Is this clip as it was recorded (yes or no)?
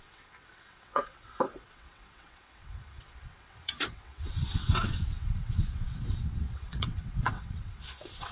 no